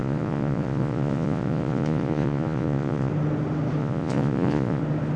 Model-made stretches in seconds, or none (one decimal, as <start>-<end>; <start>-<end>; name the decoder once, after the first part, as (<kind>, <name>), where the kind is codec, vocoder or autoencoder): 0.0-3.1 (vocoder, Vocos); 3.8-4.8

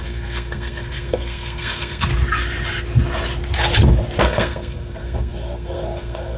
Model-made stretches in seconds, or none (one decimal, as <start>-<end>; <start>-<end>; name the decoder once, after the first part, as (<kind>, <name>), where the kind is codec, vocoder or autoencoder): 0.0-2.1 (codec, SNAC); 4.2-6.4

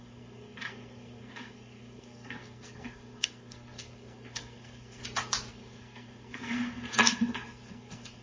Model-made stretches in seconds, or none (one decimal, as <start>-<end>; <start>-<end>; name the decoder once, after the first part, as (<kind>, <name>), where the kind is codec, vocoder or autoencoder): 0.0-5.0 (codec, SNAC); 5.5-8.2